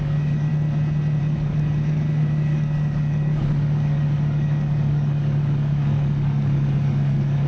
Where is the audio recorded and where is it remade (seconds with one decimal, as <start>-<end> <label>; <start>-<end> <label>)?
0.0-0.5 remade; 0.5-1.2 recorded; 1.2-7.5 remade